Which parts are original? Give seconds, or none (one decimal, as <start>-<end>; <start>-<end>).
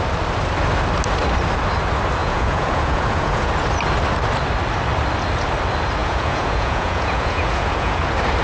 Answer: 0.0-2.2; 3.5-6.0; 8.0-8.4